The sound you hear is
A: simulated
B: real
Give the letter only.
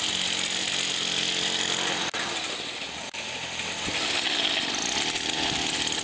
B